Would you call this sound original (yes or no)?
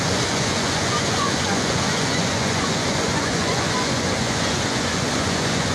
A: no